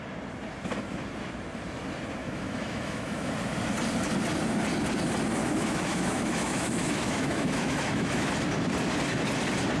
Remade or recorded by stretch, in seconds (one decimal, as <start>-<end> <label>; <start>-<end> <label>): 0.0-2.2 recorded; 2.2-3.3 remade; 3.3-5.4 recorded; 5.4-8.3 remade; 8.3-9.8 recorded